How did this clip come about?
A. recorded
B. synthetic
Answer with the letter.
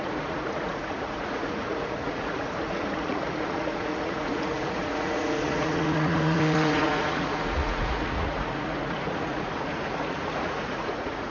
B